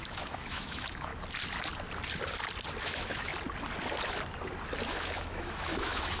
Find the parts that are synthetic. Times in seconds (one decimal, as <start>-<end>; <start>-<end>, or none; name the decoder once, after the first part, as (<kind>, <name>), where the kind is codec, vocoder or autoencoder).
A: 0.0-1.1 (autoencoder, DAC-VAE); 2.8-3.3; 4.9-6.2